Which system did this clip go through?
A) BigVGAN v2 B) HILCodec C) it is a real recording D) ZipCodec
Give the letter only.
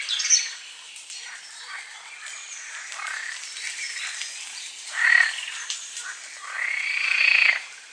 C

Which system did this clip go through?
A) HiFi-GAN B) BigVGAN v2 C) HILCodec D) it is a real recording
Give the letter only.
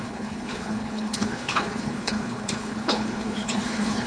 C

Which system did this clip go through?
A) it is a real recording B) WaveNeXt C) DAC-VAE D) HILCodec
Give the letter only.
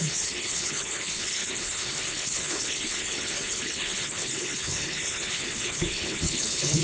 D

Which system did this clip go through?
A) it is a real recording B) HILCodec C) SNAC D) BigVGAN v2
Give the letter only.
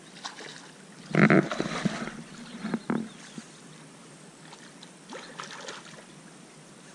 A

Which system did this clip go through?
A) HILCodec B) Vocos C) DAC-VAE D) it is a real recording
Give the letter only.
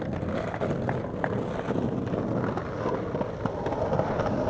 D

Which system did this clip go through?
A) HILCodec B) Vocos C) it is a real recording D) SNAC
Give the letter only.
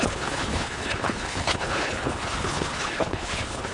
A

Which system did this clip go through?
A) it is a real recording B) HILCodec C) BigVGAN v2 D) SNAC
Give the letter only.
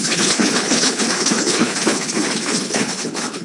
B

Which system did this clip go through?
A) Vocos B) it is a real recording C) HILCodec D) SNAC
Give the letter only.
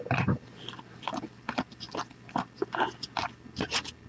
B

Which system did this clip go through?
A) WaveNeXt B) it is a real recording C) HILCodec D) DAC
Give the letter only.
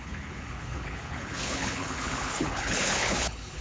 C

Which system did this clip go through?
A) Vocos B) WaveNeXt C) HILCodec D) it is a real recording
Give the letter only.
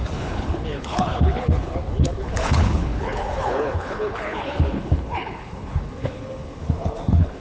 C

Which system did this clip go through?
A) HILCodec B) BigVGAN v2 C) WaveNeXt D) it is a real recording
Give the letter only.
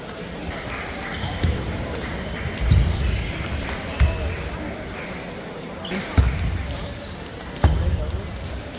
D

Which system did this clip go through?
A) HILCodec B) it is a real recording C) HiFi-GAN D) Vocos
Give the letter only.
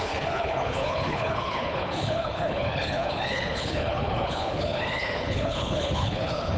A